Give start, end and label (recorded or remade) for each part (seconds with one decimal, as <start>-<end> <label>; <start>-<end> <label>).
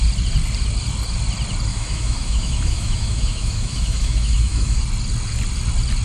0.0-1.7 recorded; 1.7-4.8 remade; 4.8-6.0 recorded